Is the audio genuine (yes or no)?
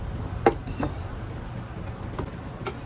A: yes